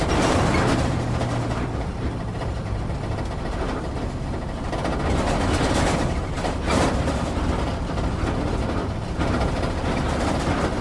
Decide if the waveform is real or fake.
real